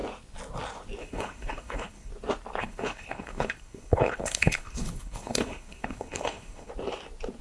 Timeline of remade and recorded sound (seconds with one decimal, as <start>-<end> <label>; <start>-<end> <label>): 0.0-1.0 recorded; 1.0-2.1 remade; 2.1-2.6 recorded; 2.6-6.7 remade; 6.7-7.4 recorded